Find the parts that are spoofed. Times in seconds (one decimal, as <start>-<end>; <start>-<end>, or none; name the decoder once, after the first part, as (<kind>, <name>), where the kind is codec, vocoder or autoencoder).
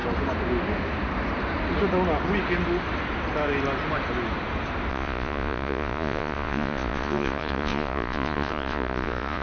4.9-9.4 (vocoder, Vocos)